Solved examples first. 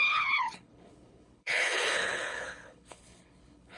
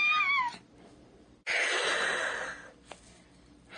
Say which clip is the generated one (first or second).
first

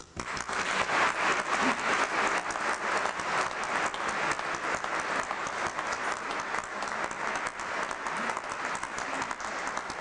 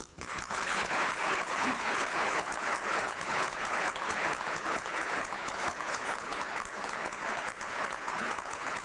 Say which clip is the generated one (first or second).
second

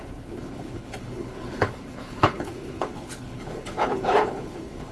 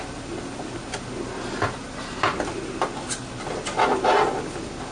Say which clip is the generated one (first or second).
first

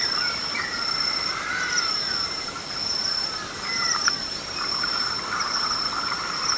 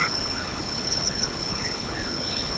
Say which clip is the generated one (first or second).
second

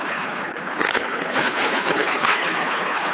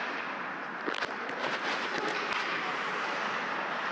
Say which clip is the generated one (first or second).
first